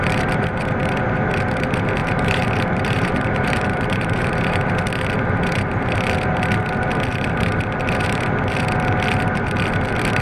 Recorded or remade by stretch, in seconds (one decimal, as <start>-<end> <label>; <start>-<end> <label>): 0.0-2.0 recorded; 2.0-4.7 remade; 4.7-7.1 recorded; 7.1-8.2 remade; 8.2-10.2 recorded